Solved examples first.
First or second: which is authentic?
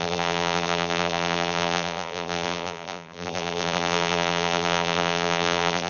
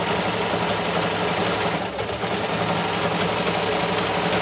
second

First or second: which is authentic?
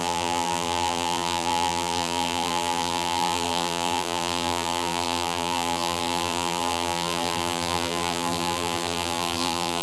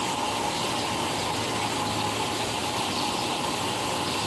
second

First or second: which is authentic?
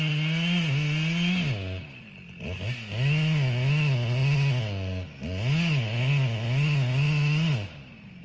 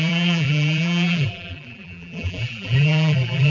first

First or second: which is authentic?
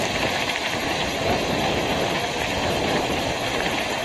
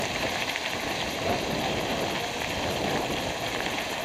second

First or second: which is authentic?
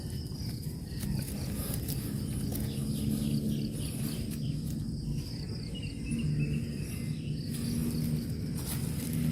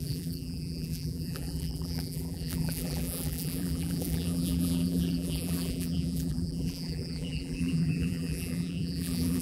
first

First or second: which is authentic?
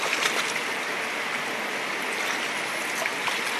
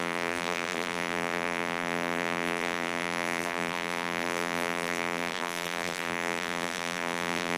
first